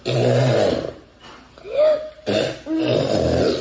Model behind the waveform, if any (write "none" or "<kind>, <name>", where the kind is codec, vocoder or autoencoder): none